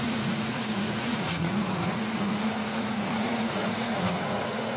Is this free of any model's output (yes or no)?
no